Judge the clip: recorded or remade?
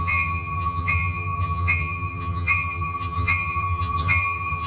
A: remade